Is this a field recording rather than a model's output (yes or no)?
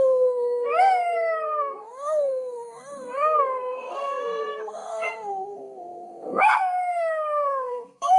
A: no